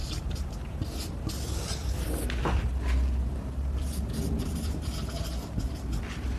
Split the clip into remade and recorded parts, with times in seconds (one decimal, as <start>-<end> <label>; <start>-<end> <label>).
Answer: 0.0-0.7 remade; 0.7-6.4 recorded